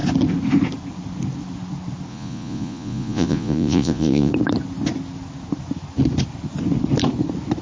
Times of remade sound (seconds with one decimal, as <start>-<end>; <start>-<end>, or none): 2.1-4.3